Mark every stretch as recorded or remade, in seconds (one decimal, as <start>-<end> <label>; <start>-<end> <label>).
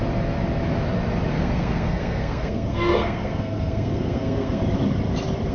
0.0-1.3 recorded; 1.3-4.6 remade; 4.6-5.5 recorded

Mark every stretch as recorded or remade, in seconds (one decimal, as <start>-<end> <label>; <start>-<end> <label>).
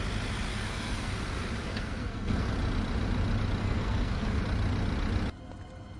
0.0-0.5 recorded; 0.5-1.1 remade; 1.1-1.7 recorded; 1.7-2.5 remade; 2.5-3.6 recorded; 3.6-4.4 remade; 4.4-6.0 recorded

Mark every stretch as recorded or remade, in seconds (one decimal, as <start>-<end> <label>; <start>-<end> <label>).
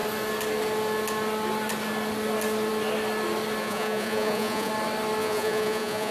0.0-3.6 recorded; 3.6-4.7 remade; 4.7-5.2 recorded; 5.2-6.1 remade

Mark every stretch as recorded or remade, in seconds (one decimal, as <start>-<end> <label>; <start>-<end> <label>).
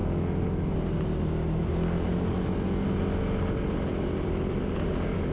0.0-5.3 recorded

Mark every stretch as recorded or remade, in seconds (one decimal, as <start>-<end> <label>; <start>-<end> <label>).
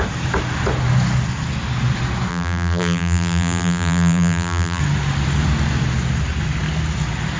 0.0-2.3 recorded; 2.3-4.8 remade; 4.8-7.4 recorded